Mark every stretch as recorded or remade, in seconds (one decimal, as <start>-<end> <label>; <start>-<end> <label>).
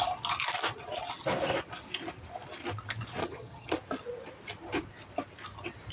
0.0-3.2 recorded; 3.2-3.8 remade; 3.8-5.9 recorded